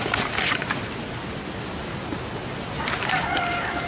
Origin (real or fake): real